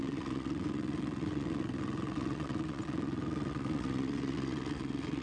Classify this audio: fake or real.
fake